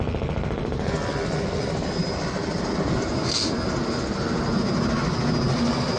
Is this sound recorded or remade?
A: recorded